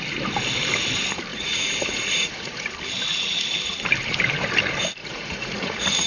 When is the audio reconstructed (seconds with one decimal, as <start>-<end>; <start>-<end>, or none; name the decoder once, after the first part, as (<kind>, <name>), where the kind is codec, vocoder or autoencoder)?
1.3-2.7 (vocoder, Vocos); 5.0-6.1